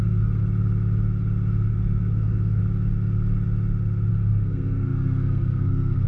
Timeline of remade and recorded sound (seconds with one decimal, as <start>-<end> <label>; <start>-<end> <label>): 0.0-0.4 remade; 0.4-1.7 recorded; 1.7-2.6 remade; 2.6-4.1 recorded; 4.1-6.1 remade